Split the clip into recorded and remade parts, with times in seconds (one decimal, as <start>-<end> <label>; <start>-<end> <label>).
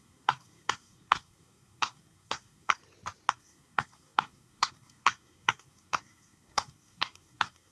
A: 0.0-2.8 remade; 2.8-3.3 recorded; 3.3-7.7 remade